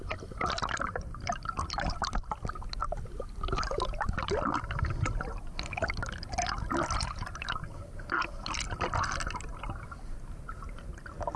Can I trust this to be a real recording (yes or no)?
yes